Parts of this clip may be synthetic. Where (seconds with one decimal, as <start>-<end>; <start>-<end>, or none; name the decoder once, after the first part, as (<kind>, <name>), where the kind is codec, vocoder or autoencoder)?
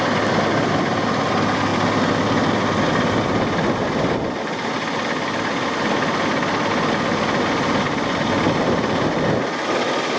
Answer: none